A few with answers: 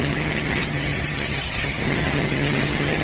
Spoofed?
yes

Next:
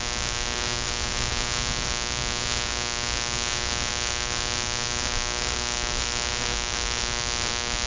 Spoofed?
yes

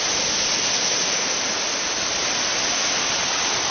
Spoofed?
no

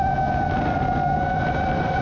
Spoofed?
no